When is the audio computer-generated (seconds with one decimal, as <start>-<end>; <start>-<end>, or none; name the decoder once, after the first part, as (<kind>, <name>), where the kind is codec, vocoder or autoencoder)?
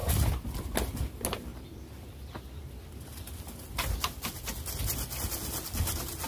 none